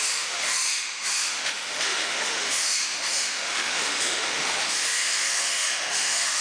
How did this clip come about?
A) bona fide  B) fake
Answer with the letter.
B